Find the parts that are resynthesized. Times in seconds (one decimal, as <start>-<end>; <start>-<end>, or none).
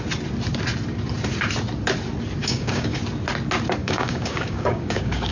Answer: 2.4-3.0; 3.8-5.3